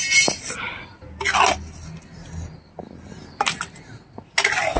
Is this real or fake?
real